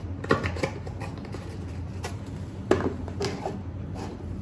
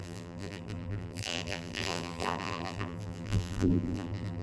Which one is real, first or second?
first